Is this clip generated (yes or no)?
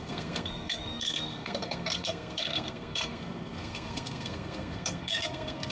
yes